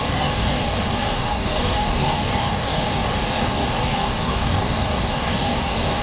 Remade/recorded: remade